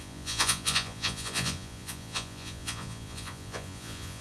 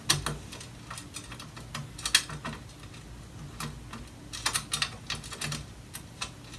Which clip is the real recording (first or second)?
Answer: second